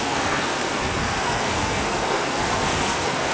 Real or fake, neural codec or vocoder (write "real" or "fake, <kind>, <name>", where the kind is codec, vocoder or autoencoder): fake, codec, SNAC